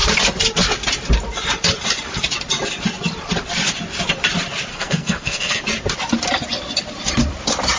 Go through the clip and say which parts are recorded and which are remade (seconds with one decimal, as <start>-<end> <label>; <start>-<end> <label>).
0.0-4.7 recorded; 4.7-5.6 remade; 5.6-7.8 recorded